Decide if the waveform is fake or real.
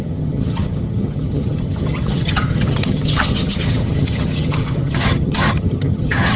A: fake